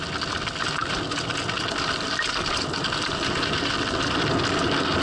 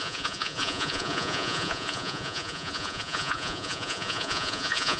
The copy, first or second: second